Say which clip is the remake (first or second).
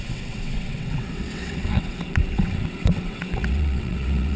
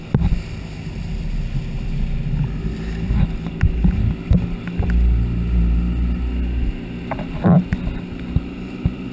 first